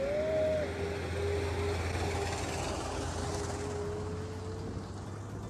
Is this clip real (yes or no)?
yes